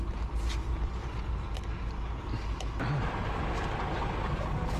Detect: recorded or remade recorded